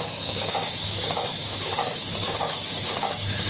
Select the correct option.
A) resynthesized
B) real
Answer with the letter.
A